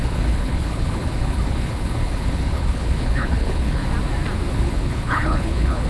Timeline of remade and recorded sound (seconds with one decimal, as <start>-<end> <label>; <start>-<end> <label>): 0.0-3.8 remade; 3.8-4.5 recorded; 4.5-5.9 remade